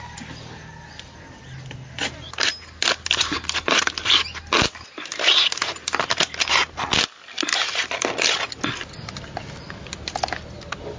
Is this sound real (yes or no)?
yes